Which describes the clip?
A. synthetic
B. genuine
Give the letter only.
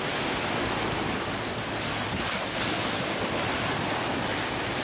B